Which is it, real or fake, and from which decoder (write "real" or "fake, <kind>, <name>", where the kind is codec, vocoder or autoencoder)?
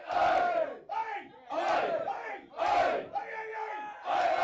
real